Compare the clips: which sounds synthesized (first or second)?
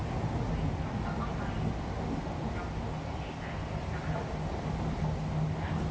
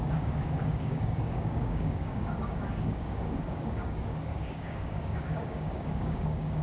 second